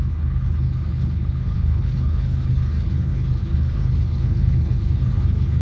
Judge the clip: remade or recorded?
remade